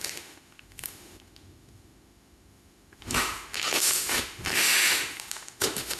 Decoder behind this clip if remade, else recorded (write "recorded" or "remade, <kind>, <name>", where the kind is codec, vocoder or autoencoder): remade, autoencoder, DAC-VAE